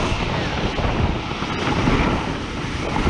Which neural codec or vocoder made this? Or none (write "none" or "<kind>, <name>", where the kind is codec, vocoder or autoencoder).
none